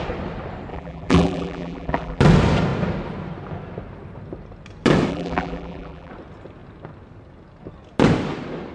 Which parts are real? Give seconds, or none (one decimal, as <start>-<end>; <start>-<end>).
0.0-0.7; 2.2-5.1; 6.1-8.7